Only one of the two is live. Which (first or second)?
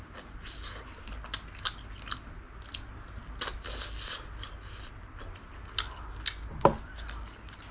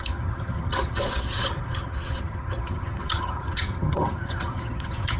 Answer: first